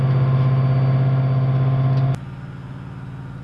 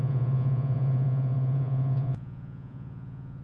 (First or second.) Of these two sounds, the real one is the first